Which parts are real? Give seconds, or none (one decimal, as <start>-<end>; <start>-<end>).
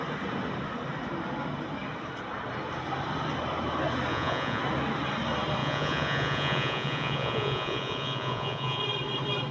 0.0-4.1; 4.6-5.6; 8.8-9.5